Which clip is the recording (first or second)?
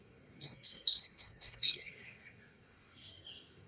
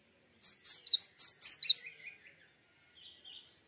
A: second